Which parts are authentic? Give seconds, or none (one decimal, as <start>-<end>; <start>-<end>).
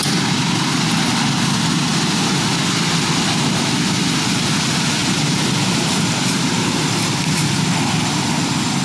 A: 0.0-8.8